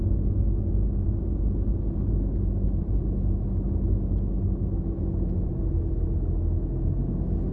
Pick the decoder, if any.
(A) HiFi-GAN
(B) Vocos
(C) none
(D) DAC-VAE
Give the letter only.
C